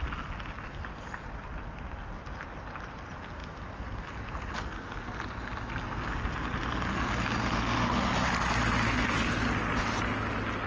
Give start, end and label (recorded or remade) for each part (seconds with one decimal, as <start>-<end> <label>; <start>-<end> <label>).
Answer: 0.0-10.7 recorded